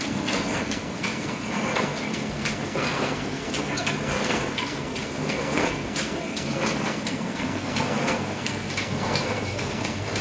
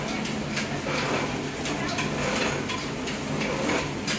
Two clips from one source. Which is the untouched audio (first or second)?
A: second